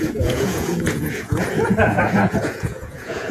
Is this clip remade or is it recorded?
remade